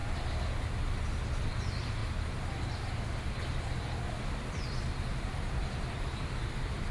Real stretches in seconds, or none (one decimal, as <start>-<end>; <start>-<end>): 0.0-1.4; 2.0-4.4